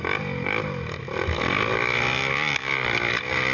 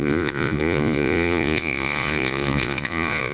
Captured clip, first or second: first